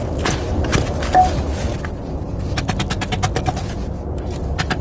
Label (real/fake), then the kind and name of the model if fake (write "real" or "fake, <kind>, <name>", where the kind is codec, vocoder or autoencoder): real